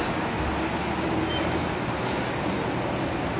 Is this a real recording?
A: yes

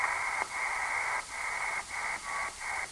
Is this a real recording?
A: yes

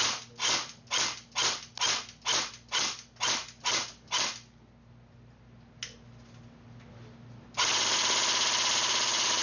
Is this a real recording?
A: yes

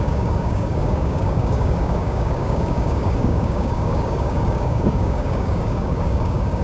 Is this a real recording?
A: no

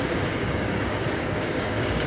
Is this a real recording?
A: no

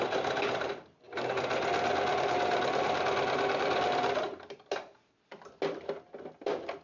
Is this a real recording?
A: yes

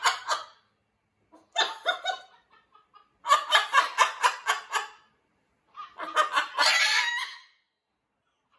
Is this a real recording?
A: yes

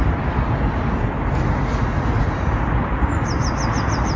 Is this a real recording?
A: yes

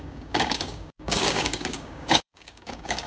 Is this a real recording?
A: no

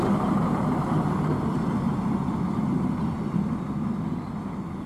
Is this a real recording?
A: yes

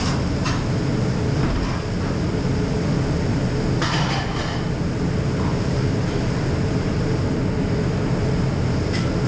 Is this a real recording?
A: yes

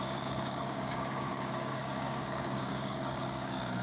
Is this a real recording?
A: no